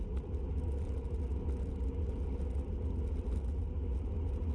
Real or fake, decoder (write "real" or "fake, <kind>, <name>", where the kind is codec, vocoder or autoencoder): real